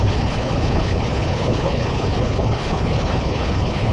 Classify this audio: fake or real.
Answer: fake